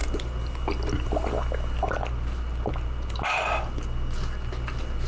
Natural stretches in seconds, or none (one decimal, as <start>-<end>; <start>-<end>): 0.0-5.1